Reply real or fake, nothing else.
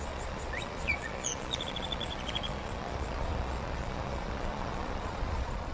fake